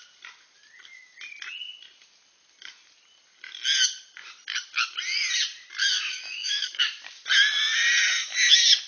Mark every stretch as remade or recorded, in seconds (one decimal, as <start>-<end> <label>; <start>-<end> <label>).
0.0-5.8 recorded; 5.8-6.8 remade; 6.8-8.9 recorded